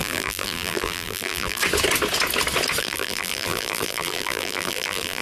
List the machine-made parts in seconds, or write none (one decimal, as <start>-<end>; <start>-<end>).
0.0-1.6; 2.8-5.2